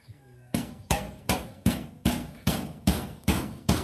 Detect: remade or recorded remade